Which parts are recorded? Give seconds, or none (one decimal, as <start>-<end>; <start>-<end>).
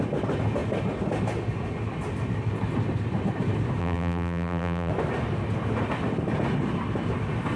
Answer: 0.0-3.8; 4.9-7.6